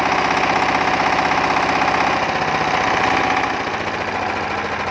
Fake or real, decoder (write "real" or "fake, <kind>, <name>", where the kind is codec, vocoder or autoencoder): real